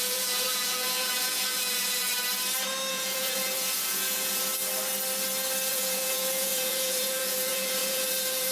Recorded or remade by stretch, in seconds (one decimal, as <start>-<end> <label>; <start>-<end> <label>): 0.0-2.1 remade; 2.1-2.9 recorded; 2.9-4.5 remade; 4.5-5.7 recorded; 5.7-8.5 remade